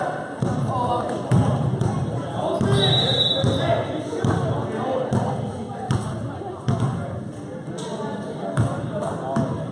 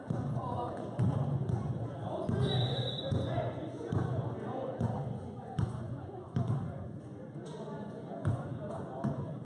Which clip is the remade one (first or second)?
second